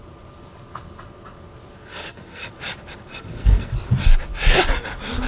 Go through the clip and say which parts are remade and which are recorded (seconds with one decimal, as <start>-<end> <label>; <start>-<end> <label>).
0.0-1.9 recorded; 1.9-2.5 remade; 2.5-3.1 recorded; 3.1-3.7 remade; 3.7-5.3 recorded